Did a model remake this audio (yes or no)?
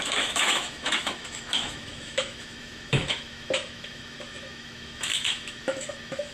yes